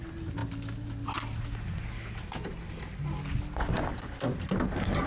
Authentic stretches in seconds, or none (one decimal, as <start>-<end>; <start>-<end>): 0.0-5.1